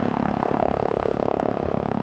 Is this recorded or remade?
remade